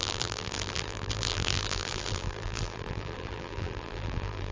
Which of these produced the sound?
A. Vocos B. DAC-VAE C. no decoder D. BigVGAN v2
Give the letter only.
D